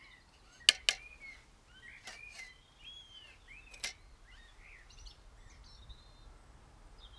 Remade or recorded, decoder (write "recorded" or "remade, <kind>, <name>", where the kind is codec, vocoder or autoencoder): recorded